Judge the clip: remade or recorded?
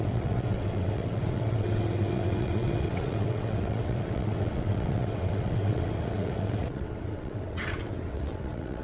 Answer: remade